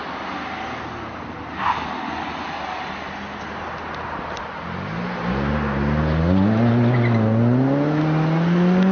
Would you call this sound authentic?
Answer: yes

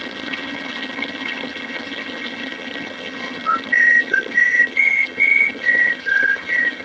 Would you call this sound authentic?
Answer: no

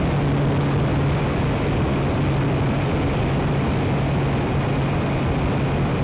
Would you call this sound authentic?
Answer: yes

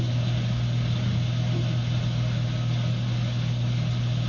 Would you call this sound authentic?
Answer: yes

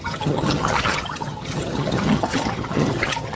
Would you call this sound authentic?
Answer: no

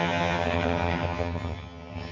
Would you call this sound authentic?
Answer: no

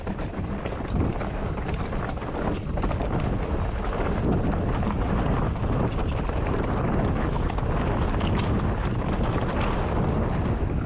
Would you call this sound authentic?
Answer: yes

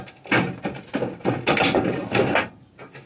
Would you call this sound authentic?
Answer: yes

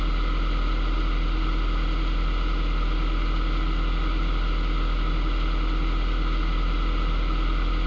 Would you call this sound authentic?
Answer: yes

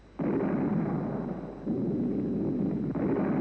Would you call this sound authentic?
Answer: yes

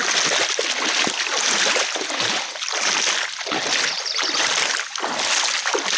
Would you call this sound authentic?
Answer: yes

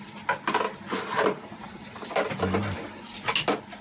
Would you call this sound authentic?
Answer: yes